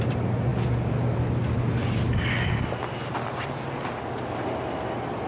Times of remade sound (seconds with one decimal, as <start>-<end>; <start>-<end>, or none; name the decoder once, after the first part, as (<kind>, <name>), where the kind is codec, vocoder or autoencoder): none